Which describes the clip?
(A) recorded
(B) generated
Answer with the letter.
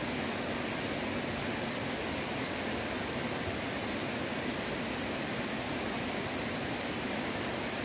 A